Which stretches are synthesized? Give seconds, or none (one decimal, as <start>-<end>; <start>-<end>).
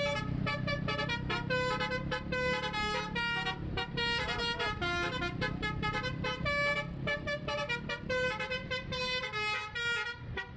none